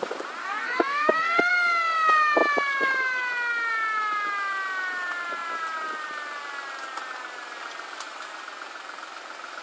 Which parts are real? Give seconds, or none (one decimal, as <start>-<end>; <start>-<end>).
0.0-0.4; 1.5-9.6